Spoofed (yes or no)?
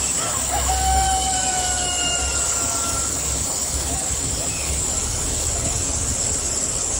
yes